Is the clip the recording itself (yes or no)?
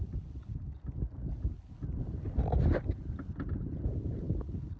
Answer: yes